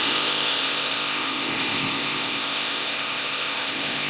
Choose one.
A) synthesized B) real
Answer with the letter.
A